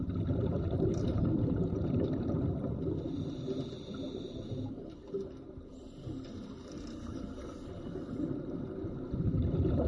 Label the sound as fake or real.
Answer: real